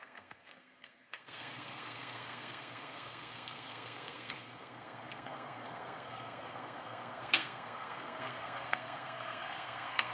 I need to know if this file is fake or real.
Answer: fake